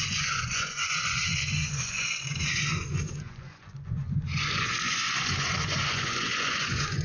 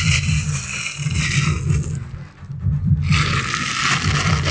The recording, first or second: second